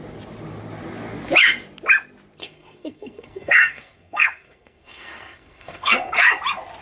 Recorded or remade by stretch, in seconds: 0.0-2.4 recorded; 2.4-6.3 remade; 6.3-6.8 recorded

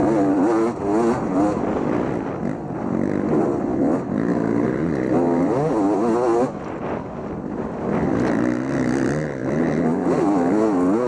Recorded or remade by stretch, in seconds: 0.0-11.1 recorded

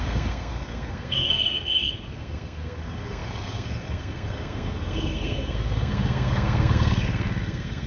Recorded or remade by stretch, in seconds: 0.0-7.9 remade

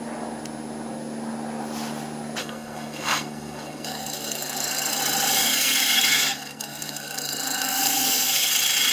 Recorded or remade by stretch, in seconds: 0.0-2.4 recorded; 2.4-5.0 remade; 5.0-5.4 recorded; 5.4-8.5 remade; 8.5-8.9 recorded

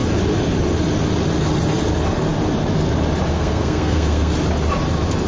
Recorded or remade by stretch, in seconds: 0.0-3.3 recorded; 3.3-4.3 remade; 4.3-5.3 recorded

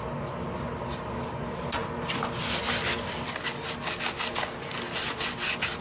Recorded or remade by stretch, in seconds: 0.0-5.8 recorded

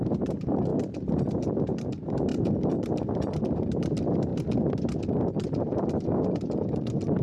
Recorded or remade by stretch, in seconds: 0.0-7.2 recorded

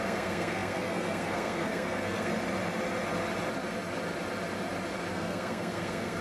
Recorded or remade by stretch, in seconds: 0.0-2.3 remade; 2.3-5.1 recorded; 5.1-6.2 remade